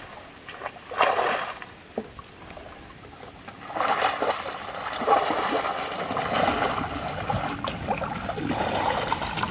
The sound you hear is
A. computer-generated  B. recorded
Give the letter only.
B